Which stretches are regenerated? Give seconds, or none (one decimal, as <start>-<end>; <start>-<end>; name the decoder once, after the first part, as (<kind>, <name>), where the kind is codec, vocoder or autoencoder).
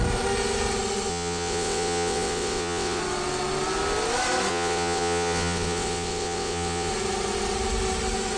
1.1-3.0 (vocoder, WaveNeXt); 4.5-6.9